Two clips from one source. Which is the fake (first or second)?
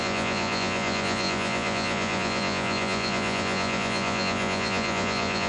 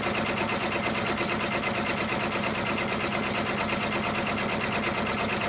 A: first